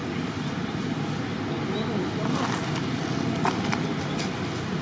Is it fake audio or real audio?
real